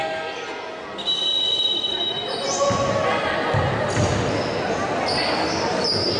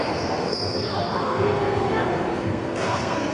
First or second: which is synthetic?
second